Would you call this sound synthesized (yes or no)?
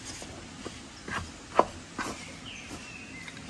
no